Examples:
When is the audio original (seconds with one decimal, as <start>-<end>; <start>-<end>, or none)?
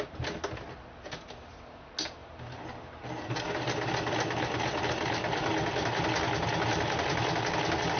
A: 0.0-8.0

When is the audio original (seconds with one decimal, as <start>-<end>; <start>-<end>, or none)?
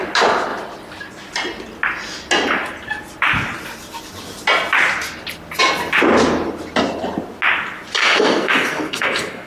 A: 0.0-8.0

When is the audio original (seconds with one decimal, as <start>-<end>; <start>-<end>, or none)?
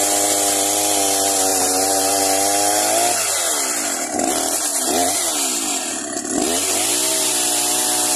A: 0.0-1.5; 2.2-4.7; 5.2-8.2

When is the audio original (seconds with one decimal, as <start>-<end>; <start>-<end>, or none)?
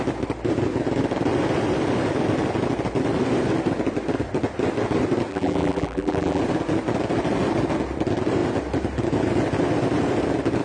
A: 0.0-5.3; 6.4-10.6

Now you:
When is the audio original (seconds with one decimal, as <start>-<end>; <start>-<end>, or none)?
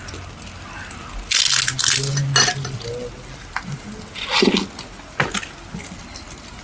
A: 0.0-6.6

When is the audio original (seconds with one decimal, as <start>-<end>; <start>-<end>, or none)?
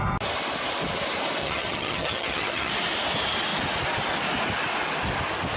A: 0.0-1.4; 2.7-5.6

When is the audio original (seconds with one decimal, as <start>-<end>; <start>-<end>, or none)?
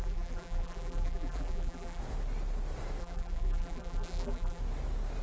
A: 2.0-3.0; 4.6-5.2